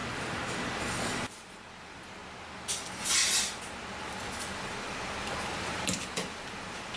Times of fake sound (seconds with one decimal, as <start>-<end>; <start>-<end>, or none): 0.6-2.2; 4.4-7.0